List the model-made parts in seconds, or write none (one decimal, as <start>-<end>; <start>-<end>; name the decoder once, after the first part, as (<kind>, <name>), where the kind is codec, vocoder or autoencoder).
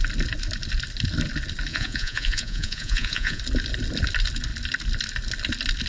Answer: 1.7-3.4 (vocoder, Vocos)